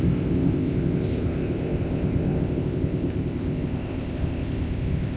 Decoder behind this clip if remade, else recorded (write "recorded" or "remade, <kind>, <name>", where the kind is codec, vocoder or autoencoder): remade, codec, ZipCodec